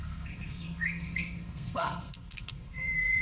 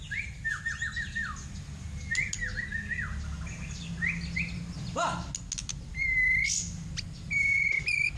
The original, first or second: second